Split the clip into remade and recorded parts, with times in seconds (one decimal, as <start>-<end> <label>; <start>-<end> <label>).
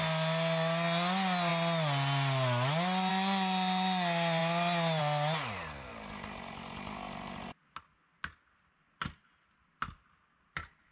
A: 0.0-10.9 recorded